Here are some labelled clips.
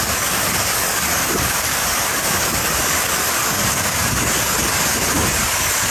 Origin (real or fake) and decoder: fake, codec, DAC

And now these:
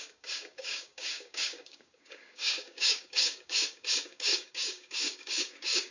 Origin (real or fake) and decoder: fake, codec, DAC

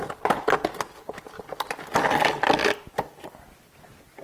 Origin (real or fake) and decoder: real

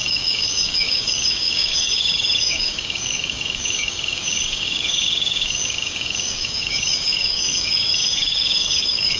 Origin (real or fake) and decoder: fake, codec, DAC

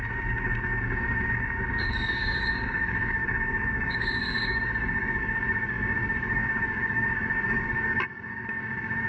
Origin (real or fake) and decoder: fake, codec, DAC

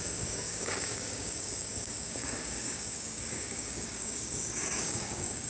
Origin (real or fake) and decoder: fake, codec, DAC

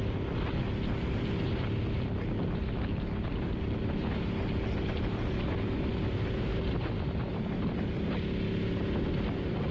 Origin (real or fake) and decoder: real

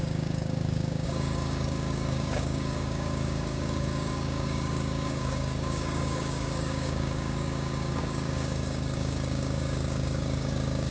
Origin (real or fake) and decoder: fake, codec, DAC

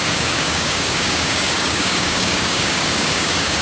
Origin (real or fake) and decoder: fake, codec, DAC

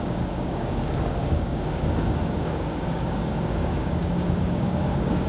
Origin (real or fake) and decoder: fake, codec, DAC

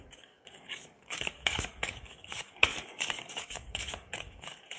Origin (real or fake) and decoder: fake, codec, DAC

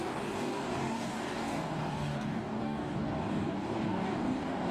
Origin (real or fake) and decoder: fake, codec, DAC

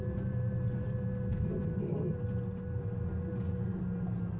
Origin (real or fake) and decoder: real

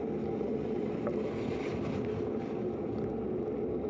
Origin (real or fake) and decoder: real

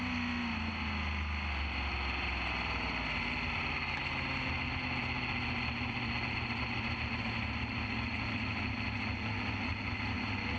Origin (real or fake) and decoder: real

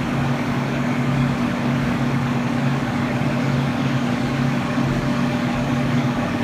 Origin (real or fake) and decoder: fake, codec, DAC